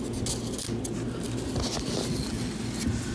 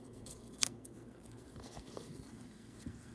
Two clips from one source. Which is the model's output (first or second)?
second